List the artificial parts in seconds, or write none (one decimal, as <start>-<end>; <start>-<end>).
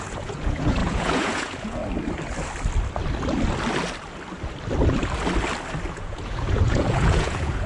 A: 0.0-1.8; 5.9-7.7